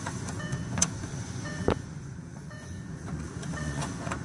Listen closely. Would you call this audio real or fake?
fake